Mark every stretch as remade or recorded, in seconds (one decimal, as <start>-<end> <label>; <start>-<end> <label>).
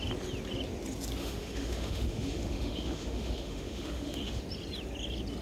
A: 0.0-1.2 recorded; 1.2-4.4 remade; 4.4-5.4 recorded